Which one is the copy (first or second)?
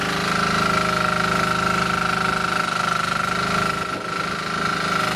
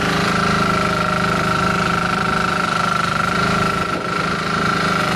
second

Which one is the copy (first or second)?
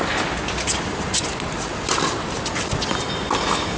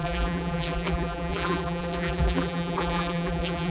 second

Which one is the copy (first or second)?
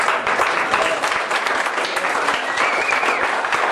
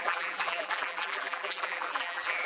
second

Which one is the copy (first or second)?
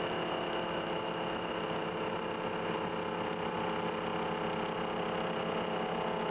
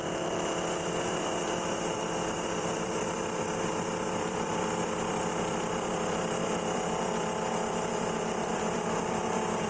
second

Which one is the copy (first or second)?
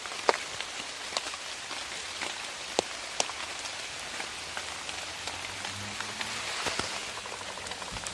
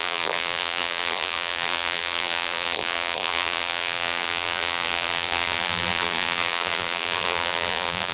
second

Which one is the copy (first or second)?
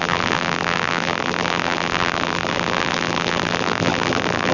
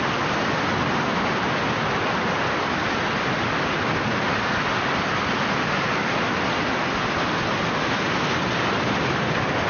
first